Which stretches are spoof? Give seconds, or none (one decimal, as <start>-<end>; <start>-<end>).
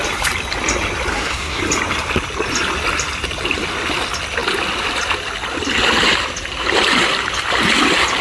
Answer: 1.1-1.6